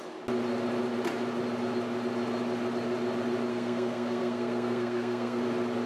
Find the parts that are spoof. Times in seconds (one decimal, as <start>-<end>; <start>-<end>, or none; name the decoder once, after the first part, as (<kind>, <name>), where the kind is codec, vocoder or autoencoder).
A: 3.5-5.4 (codec, SNAC)